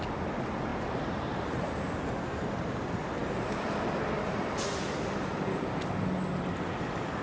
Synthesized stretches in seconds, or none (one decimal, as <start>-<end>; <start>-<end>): 0.7-2.1